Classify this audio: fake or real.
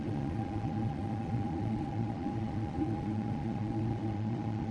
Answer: fake